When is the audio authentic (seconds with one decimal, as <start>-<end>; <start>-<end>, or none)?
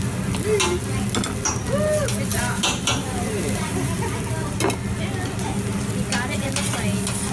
0.0-2.3; 4.2-7.3